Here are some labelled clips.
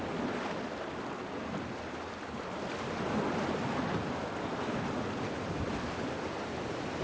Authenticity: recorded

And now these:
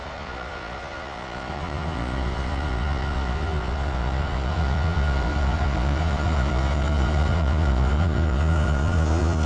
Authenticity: remade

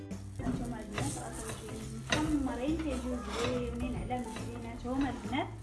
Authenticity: recorded